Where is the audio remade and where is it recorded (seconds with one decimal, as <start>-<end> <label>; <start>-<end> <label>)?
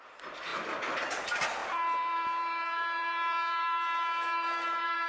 0.0-1.6 recorded; 1.6-5.1 remade